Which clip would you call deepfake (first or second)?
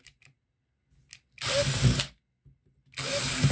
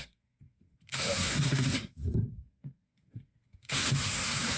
second